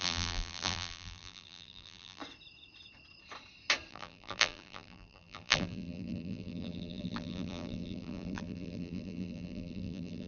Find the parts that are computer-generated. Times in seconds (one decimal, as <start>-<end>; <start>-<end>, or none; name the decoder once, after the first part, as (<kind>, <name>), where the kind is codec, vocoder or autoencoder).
0.0-2.2 (vocoder, BigVGAN v2); 3.9-10.3